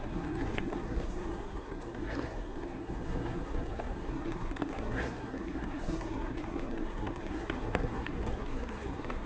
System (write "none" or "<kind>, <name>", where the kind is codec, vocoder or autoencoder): codec, SNAC